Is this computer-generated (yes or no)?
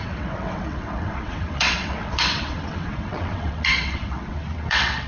yes